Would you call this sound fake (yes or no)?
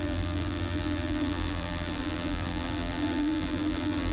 yes